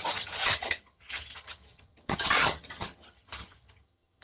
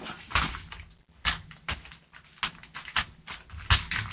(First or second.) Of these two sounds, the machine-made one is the first